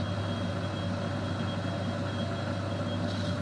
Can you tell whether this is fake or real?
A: real